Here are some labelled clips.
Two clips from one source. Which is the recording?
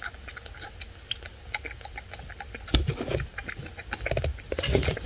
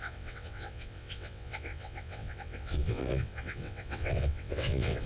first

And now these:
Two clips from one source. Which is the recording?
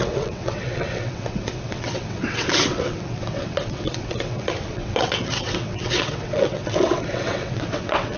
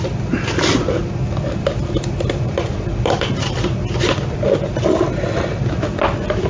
second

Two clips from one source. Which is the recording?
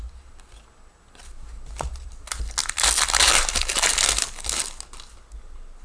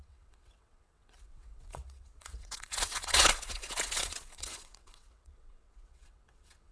first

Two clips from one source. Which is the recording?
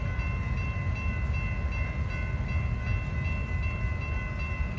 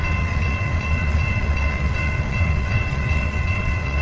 first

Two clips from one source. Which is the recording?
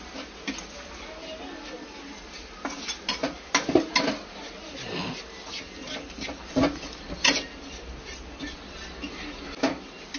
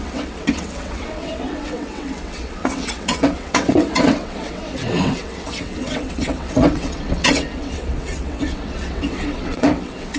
first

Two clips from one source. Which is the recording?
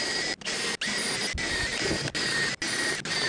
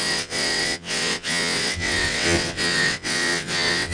first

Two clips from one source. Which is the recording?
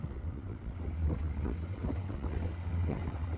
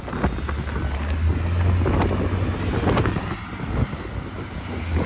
second